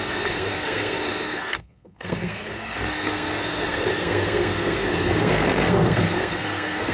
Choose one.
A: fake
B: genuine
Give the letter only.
A